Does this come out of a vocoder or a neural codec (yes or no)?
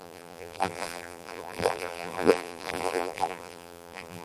yes